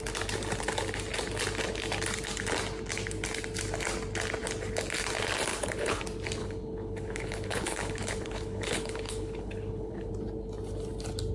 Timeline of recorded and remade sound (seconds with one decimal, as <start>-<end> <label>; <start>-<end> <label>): 0.0-5.5 recorded; 5.5-6.0 remade; 6.0-6.4 recorded; 6.4-10.1 remade; 10.1-11.3 recorded